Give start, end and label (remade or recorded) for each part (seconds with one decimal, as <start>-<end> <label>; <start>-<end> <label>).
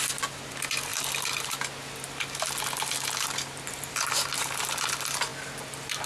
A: 0.0-6.1 recorded